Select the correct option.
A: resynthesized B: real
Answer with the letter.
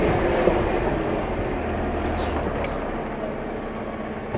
B